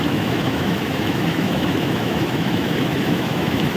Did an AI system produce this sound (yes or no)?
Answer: yes